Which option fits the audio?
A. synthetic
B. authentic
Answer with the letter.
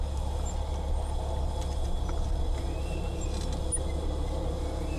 B